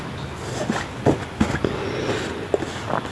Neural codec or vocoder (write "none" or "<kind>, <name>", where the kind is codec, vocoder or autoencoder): none